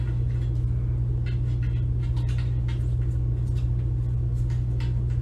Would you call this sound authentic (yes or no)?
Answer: yes